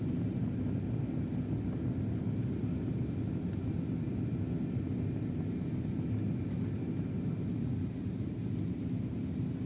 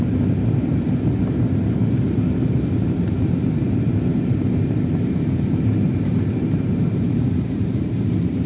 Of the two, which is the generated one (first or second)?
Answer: second